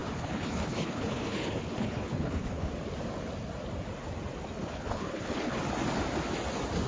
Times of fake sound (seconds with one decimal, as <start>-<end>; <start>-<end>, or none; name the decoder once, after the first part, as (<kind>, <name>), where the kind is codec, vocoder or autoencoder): 0.0-2.7 (codec, HILCodec); 4.6-5.6